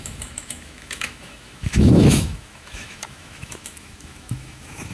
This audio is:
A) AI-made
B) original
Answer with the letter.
A